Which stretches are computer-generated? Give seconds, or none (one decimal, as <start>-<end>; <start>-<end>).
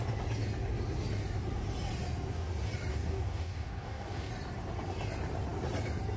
2.9-4.3